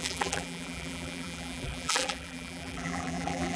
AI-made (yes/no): yes